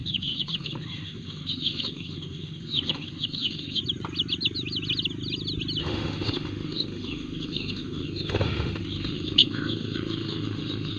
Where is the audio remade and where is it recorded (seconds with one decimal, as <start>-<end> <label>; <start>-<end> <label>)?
0.0-3.8 remade; 3.8-5.8 recorded; 5.8-11.0 remade